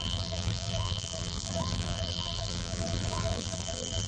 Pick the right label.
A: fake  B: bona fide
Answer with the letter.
A